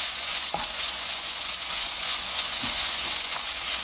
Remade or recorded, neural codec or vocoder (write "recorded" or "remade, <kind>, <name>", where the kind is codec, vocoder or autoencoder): remade, vocoder, Vocos